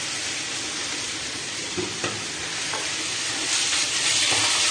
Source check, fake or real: real